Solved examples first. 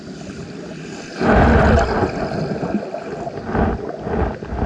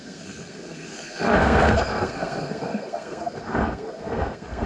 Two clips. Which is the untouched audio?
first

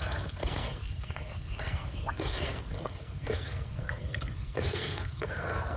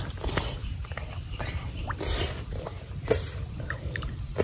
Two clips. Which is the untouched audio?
second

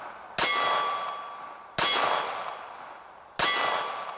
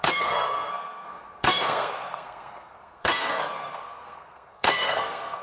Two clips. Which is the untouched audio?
first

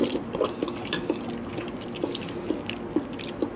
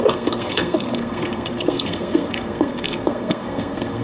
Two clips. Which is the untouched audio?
first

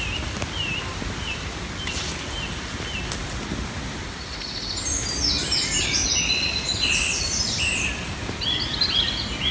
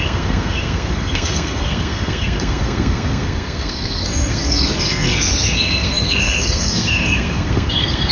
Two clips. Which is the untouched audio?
first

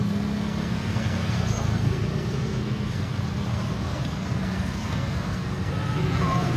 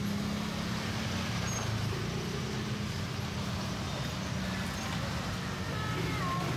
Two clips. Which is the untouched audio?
second